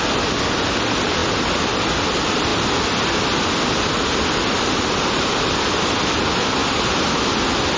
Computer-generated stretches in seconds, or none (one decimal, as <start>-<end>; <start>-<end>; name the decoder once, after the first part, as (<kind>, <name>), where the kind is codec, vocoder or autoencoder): none